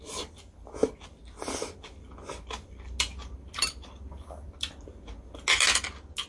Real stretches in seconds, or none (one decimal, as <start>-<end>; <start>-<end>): 0.0-6.3